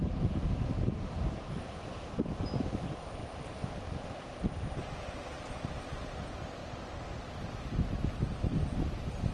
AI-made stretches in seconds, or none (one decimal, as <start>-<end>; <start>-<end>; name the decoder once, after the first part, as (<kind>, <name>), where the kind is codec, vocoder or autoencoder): 0.0-9.3 (vocoder, BigVGAN v2)